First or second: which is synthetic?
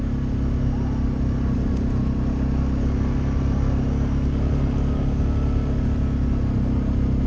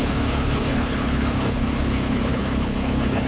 second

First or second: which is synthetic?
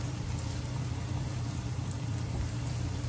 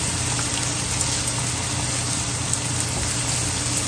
first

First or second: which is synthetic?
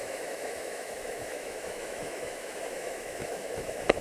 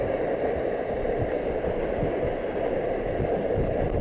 first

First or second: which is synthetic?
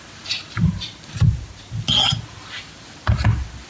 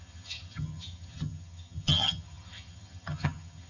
second